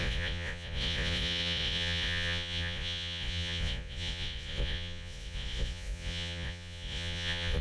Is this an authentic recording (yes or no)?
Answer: no